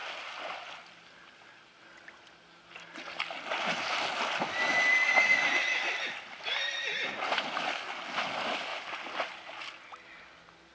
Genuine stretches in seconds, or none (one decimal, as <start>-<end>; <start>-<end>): 0.0-10.7